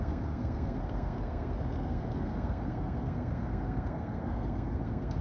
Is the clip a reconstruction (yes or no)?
yes